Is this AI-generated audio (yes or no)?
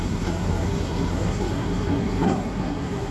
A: yes